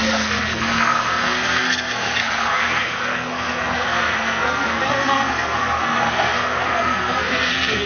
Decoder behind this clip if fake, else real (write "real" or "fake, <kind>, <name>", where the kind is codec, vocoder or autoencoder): fake, codec, SNAC